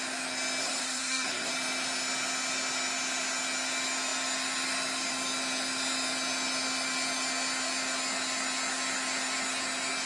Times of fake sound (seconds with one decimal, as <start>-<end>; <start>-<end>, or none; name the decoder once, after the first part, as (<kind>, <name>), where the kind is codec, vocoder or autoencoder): 0.6-1.5 (codec, SNAC)